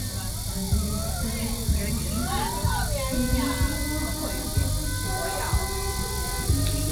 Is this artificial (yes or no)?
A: no